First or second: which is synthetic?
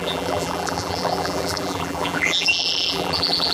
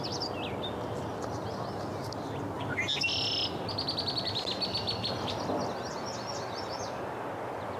first